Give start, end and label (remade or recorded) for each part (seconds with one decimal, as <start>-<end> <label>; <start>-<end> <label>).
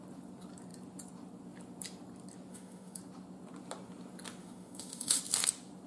0.0-2.5 recorded; 2.5-3.0 remade; 3.0-4.4 recorded; 4.4-5.2 remade; 5.2-5.9 recorded